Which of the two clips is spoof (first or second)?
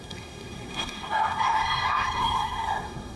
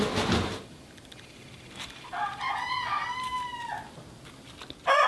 first